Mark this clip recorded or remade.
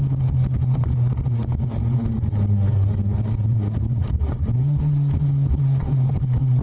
recorded